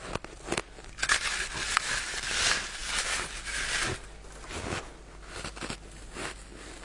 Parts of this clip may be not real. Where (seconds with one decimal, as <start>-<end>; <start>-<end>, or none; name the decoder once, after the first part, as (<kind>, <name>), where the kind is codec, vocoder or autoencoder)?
none